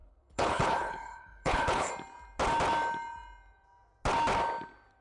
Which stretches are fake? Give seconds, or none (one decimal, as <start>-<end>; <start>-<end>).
0.0-1.9